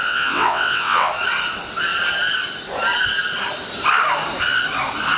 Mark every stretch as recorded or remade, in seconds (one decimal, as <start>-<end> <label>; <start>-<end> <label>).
0.0-1.1 remade; 1.1-5.2 recorded